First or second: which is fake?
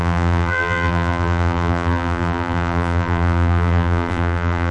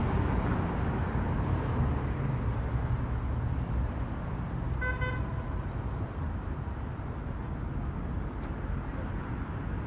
first